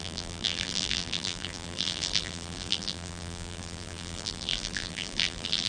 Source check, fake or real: fake